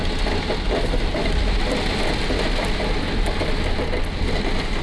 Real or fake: real